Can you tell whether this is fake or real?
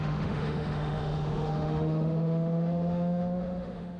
fake